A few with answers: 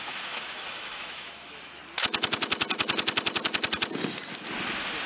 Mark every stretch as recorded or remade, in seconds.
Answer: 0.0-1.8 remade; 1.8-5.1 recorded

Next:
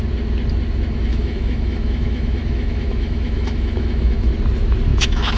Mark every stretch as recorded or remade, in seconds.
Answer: 0.0-1.1 recorded; 1.1-4.3 remade; 4.3-4.9 recorded; 4.9-5.4 remade